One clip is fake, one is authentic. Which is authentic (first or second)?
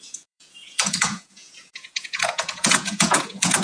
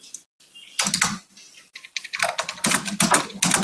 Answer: second